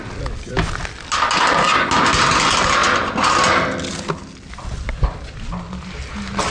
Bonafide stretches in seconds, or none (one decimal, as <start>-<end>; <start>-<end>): 0.0-6.5